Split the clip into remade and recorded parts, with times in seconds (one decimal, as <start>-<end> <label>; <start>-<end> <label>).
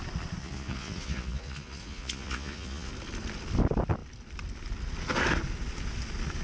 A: 0.0-0.4 recorded; 0.4-2.9 remade; 2.9-6.4 recorded